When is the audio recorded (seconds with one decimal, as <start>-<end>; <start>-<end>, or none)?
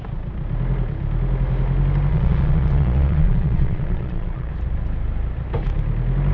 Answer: 0.0-2.1; 4.5-6.3